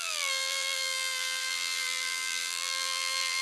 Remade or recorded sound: remade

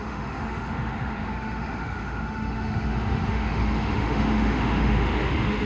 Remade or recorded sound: remade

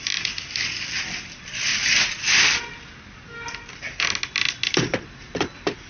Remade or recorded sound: recorded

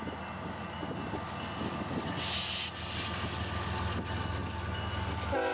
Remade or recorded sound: recorded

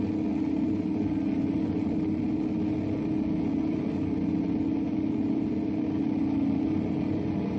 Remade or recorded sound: recorded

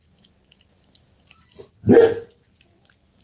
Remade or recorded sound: recorded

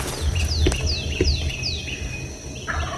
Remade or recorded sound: recorded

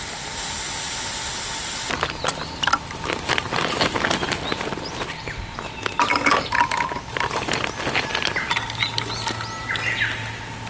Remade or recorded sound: recorded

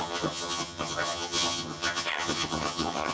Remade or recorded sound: remade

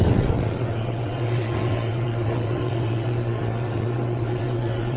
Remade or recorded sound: remade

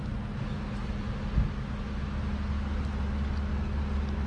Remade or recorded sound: recorded